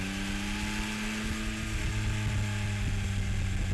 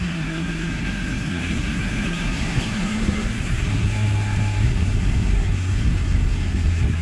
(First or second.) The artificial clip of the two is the second